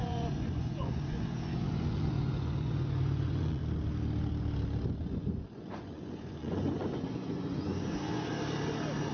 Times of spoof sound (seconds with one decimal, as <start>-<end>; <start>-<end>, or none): 0.0-3.6; 5.0-8.3